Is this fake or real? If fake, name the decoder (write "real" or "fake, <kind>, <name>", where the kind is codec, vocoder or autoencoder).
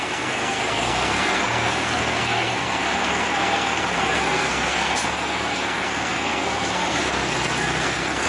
fake, codec, SNAC